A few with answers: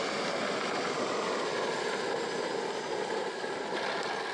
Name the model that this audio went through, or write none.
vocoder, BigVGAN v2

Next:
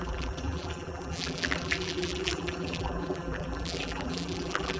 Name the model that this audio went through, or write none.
vocoder, BigVGAN v2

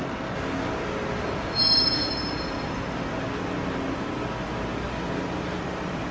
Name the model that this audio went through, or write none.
none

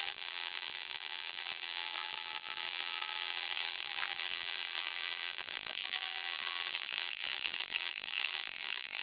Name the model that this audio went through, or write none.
vocoder, BigVGAN v2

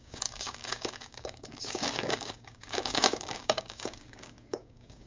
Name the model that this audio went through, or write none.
codec, DAC